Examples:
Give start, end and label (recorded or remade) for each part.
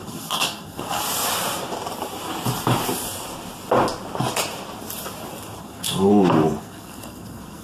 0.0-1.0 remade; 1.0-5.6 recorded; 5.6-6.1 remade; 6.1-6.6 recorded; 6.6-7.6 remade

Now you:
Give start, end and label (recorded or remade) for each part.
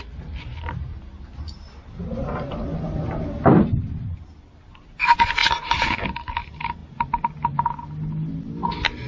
0.0-9.1 recorded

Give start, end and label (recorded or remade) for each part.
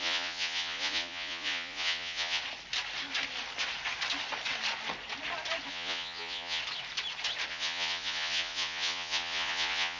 0.0-2.4 remade; 2.4-5.7 recorded; 5.7-6.6 remade; 6.6-7.5 recorded; 7.5-10.0 remade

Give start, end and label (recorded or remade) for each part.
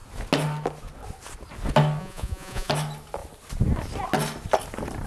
0.0-2.0 recorded; 2.0-2.7 remade; 2.7-5.1 recorded